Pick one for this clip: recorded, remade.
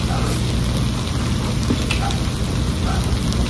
recorded